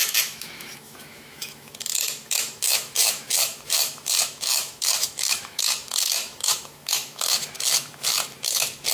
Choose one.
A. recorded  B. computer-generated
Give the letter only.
B